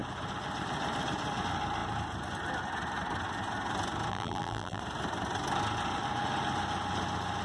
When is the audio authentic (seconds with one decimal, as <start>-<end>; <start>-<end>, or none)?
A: 0.0-4.1; 4.8-7.4